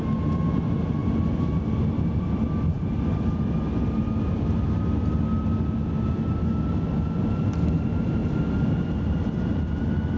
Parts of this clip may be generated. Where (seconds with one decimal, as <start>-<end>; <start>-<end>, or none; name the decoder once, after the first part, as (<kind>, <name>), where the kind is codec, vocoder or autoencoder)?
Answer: none